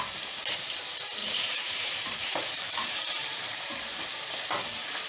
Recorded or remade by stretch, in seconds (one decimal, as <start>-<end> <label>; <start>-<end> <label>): 0.0-1.2 recorded; 1.2-4.0 remade; 4.0-5.1 recorded